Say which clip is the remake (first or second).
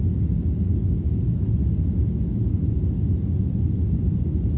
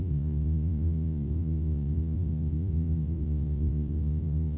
second